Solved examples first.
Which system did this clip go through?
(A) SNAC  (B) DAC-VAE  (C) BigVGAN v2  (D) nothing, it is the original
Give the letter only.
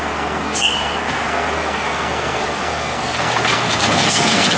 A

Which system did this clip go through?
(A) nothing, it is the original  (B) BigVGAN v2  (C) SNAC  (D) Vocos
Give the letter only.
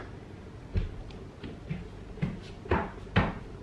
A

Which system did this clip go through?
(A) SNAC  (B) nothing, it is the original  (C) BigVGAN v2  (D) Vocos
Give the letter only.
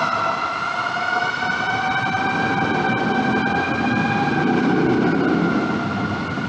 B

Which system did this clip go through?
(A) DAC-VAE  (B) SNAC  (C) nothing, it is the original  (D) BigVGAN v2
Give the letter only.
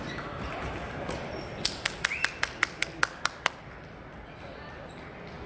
C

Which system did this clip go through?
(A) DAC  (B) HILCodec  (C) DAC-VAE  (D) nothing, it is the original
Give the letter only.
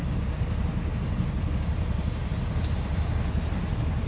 D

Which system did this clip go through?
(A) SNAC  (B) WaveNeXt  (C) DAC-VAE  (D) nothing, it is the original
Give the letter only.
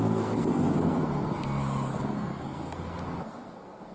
A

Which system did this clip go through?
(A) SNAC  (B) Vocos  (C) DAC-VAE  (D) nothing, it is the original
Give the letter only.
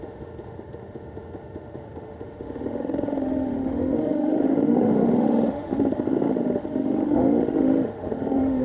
C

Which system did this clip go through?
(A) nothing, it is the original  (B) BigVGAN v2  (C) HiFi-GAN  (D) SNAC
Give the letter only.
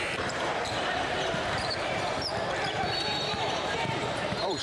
B